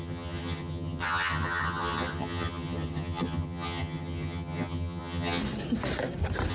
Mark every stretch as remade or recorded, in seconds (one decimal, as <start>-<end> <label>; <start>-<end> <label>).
0.0-5.4 remade; 5.4-6.5 recorded